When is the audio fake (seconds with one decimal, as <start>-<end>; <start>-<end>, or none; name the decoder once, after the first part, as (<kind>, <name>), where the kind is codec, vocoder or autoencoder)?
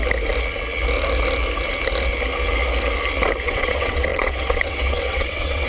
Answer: 3.4-5.7 (vocoder, WaveNeXt)